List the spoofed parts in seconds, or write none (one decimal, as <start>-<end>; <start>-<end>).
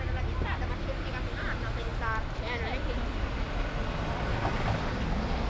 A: none